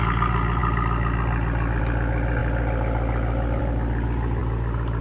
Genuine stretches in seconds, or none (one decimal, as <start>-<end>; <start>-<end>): 0.0-5.0